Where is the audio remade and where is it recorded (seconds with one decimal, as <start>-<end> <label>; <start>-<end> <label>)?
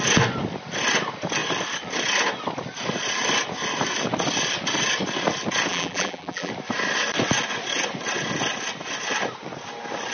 0.0-5.7 recorded; 5.7-6.5 remade; 6.5-10.1 recorded